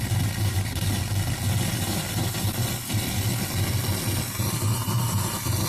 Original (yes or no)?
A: yes